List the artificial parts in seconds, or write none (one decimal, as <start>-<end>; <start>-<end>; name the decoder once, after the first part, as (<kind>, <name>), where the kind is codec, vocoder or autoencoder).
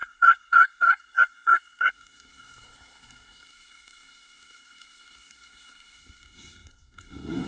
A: 0.0-7.5 (codec, SNAC)